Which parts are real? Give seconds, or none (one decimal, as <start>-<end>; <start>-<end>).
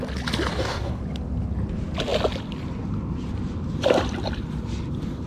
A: 0.0-0.5; 1.0-5.3